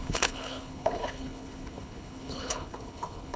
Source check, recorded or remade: remade